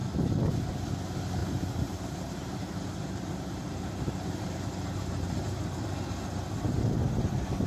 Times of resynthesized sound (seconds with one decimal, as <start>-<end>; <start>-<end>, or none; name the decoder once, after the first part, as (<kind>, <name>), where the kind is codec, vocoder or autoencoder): 1.4-5.8 (vocoder, BigVGAN v2)